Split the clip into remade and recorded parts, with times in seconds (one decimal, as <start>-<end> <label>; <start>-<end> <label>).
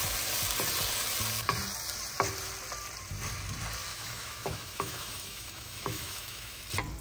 0.0-3.9 recorded; 3.9-6.6 remade; 6.6-7.0 recorded